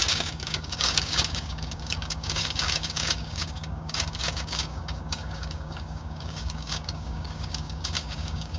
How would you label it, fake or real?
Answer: fake